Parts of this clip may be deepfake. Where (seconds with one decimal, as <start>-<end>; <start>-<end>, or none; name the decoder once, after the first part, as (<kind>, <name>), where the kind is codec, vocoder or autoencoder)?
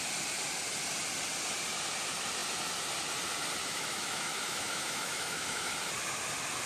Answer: 3.6-5.7 (autoencoder, DAC-VAE)